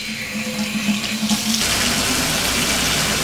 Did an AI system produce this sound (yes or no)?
no